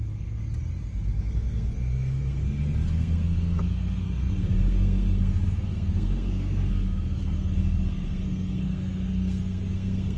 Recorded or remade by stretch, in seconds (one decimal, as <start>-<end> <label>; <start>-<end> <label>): 0.0-0.4 remade; 0.4-1.2 recorded; 1.2-10.2 remade